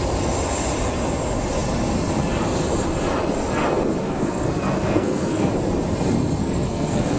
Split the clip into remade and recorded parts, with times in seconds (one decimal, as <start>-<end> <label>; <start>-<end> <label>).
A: 0.0-4.0 recorded; 4.0-5.5 remade; 5.5-6.4 recorded; 6.4-7.2 remade